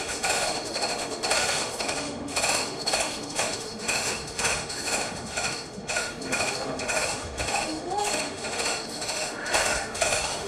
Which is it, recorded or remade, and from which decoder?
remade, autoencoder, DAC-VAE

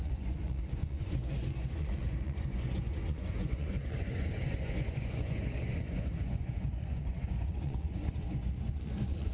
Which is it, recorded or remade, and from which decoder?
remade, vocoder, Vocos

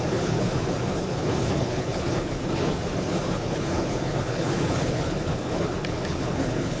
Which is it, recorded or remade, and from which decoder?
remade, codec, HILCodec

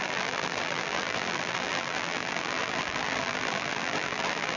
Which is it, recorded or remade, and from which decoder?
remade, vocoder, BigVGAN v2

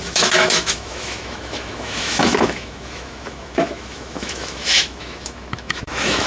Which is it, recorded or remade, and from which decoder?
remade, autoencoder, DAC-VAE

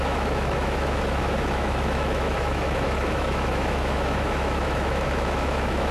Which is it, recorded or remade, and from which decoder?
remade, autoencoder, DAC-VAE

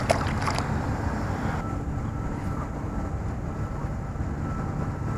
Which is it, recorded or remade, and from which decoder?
recorded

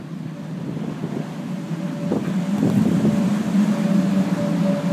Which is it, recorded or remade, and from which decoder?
recorded